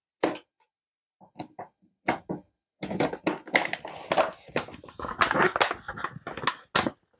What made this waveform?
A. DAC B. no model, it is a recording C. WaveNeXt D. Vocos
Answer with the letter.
B